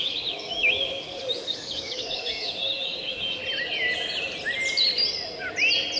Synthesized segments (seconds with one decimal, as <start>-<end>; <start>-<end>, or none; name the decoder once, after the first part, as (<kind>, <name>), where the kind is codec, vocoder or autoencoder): 0.0-3.4 (codec, DAC)